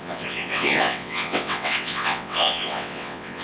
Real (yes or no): no